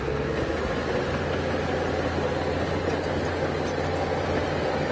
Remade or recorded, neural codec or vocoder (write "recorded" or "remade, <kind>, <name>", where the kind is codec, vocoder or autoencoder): recorded